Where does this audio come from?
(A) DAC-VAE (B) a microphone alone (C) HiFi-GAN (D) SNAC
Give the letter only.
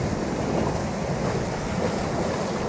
B